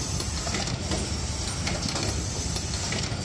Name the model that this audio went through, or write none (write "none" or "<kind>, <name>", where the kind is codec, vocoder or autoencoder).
none